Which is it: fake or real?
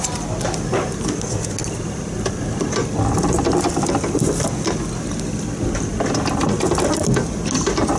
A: real